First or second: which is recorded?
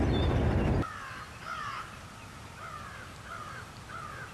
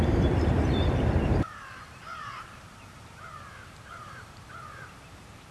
first